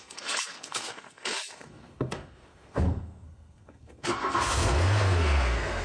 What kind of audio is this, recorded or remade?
remade